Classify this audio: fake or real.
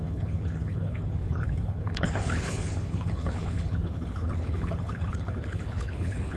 fake